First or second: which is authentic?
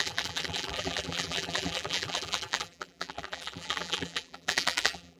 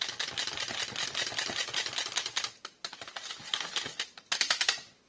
second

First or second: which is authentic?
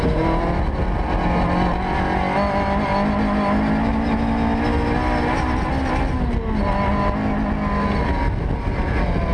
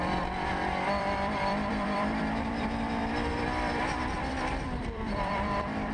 first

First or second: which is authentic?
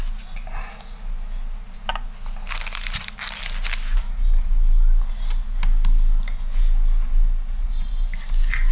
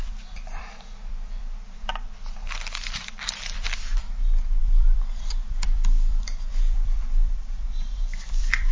first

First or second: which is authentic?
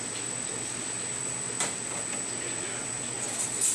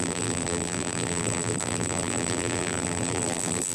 first